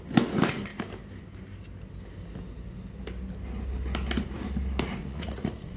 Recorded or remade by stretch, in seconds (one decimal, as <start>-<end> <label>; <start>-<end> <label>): 0.0-5.0 recorded; 5.0-5.8 remade